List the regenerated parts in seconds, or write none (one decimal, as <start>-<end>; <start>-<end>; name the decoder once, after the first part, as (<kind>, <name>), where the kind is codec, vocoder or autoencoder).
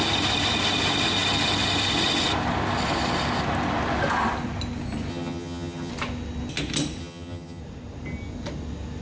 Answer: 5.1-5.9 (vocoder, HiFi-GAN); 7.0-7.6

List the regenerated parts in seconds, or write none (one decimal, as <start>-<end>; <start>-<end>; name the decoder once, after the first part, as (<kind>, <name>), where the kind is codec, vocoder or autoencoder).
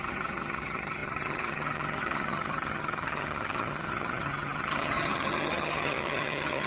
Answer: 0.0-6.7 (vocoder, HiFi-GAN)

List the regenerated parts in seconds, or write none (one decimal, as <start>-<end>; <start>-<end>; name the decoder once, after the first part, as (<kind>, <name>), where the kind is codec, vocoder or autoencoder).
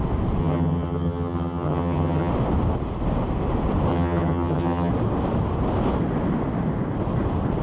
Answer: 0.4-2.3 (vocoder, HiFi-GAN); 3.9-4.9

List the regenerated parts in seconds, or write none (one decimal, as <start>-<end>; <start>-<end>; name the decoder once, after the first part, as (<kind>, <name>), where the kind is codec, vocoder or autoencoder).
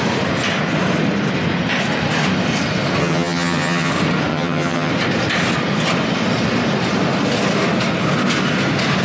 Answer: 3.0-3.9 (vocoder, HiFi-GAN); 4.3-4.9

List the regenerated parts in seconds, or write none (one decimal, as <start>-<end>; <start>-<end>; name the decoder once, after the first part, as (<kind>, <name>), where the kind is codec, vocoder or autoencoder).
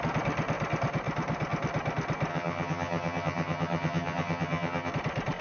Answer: 2.3-4.9 (vocoder, HiFi-GAN)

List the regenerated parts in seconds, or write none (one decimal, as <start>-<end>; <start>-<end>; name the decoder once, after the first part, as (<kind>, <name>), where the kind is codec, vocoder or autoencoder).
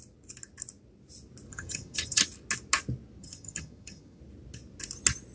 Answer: 1.5-2.2 (vocoder, HiFi-GAN); 3.2-4.2